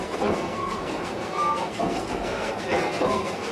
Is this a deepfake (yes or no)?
yes